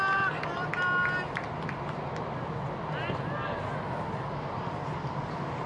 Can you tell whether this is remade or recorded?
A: recorded